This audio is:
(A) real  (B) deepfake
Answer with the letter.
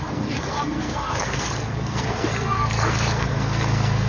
B